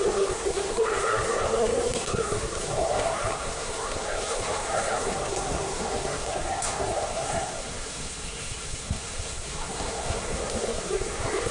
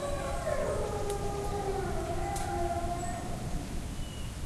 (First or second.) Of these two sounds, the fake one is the first